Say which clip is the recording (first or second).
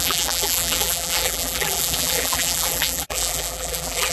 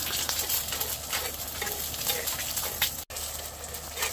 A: second